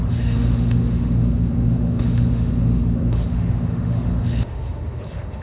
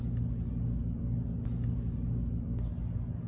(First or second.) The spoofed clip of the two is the first